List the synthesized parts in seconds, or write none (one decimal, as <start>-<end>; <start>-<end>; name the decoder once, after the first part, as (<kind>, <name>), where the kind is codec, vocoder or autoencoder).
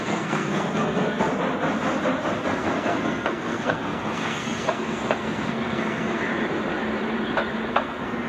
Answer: 0.0-1.3 (codec, SNAC); 2.4-6.3; 7.7-8.3